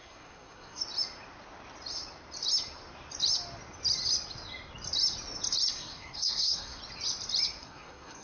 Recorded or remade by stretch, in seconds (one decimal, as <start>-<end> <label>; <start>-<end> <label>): 0.0-0.8 remade; 0.8-5.7 recorded; 5.7-6.8 remade; 6.8-7.6 recorded; 7.6-8.2 remade